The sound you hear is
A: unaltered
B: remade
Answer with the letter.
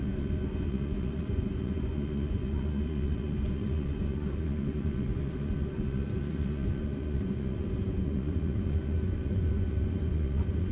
B